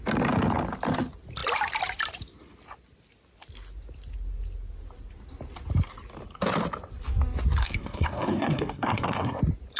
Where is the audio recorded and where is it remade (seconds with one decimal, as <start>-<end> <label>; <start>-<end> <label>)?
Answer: 0.0-7.6 recorded; 7.6-9.4 remade; 9.4-9.8 recorded